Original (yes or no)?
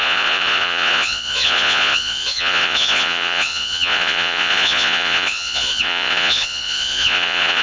no